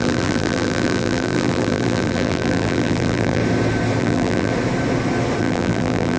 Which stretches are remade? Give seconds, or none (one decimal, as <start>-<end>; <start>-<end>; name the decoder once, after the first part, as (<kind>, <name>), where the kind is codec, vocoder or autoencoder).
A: 0.0-3.4 (vocoder, BigVGAN v2); 4.0-4.5; 5.4-6.2